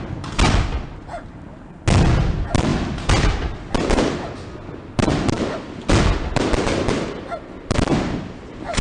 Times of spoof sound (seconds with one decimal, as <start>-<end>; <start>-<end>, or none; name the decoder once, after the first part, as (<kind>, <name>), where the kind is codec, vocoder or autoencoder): none